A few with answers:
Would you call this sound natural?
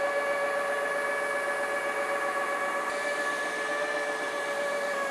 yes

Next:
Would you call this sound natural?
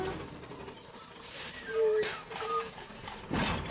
no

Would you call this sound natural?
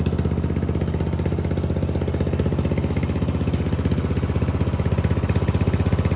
yes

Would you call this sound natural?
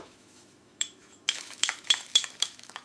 no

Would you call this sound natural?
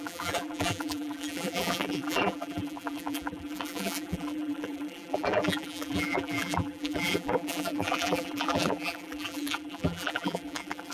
no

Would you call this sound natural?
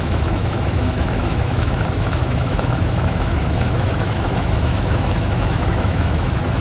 no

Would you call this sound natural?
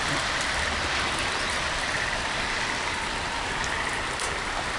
yes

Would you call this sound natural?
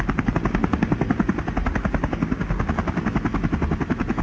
yes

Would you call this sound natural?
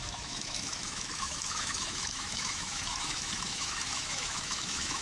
no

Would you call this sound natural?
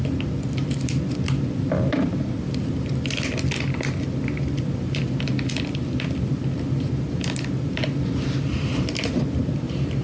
yes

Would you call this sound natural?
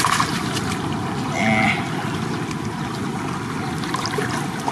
yes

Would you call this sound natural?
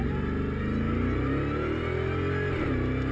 yes